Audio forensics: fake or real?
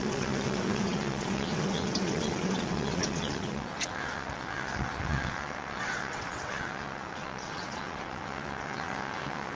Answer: fake